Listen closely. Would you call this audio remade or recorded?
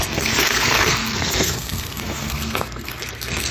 remade